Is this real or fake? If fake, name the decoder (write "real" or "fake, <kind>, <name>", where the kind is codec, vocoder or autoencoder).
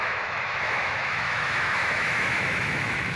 fake, autoencoder, DAC-VAE